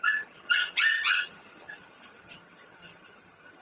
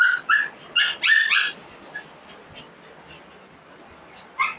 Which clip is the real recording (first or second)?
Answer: second